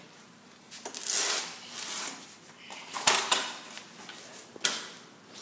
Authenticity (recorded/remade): recorded